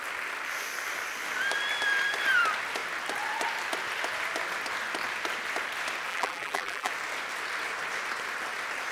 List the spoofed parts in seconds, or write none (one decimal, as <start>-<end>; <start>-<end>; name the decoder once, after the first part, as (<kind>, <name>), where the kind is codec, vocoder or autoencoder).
6.1-6.9 (vocoder, BigVGAN v2)